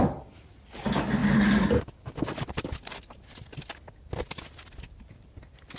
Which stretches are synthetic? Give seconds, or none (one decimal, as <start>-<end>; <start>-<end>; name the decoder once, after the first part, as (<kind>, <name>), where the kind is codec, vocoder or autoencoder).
none